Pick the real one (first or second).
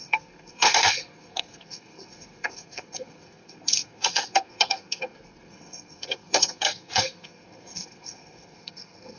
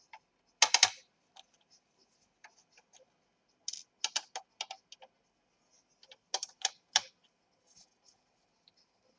second